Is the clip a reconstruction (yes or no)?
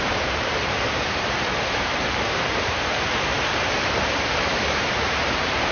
yes